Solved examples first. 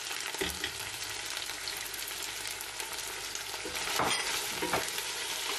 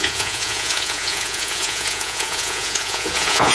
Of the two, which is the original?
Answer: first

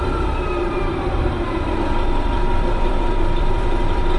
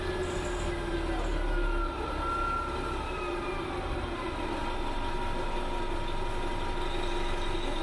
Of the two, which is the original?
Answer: second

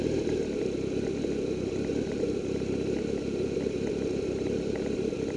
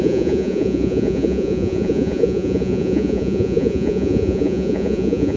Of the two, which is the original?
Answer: first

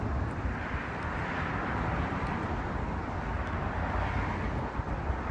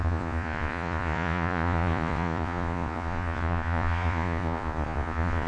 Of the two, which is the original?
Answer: first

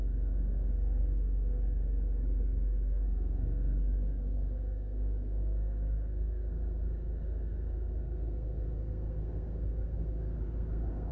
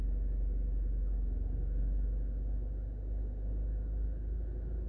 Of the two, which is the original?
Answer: second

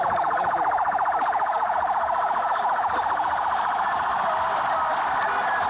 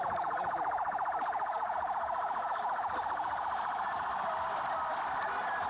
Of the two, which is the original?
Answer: first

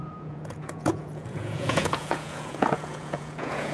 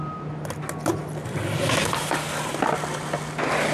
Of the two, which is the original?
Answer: second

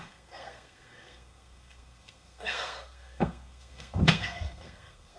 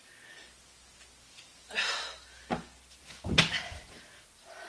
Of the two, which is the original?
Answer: second